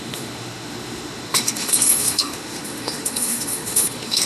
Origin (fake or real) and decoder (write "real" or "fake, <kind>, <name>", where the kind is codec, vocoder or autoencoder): fake, autoencoder, DAC-VAE